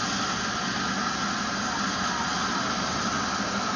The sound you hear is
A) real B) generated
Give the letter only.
A